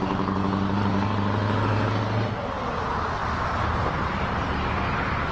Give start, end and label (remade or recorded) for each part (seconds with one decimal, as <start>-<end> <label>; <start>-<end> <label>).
0.0-5.3 recorded